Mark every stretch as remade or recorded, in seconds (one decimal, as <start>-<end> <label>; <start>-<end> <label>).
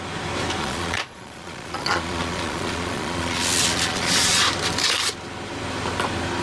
0.0-0.6 recorded; 0.6-4.4 remade; 4.4-6.4 recorded